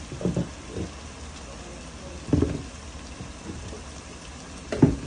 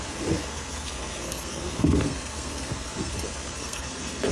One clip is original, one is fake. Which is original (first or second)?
first